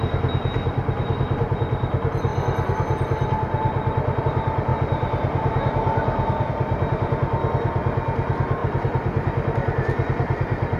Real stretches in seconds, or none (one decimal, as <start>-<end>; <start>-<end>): 0.0-10.8